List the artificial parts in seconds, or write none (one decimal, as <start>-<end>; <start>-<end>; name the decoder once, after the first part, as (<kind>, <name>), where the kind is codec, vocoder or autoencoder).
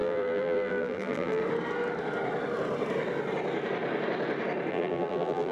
0.0-1.4 (vocoder, BigVGAN v2); 4.7-5.5